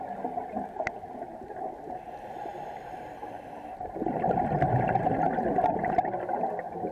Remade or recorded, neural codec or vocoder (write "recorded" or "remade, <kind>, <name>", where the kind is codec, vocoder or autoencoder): recorded